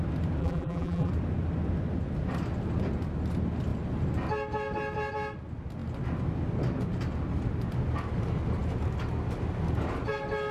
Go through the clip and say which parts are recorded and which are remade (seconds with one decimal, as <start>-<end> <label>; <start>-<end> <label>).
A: 0.0-0.4 recorded; 0.4-1.1 remade; 1.1-10.5 recorded